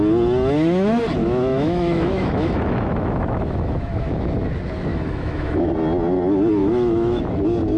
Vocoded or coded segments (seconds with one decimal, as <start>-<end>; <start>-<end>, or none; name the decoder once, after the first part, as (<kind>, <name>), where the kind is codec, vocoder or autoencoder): 1.2-4.2 (autoencoder, DAC-VAE); 4.9-5.7; 6.6-7.2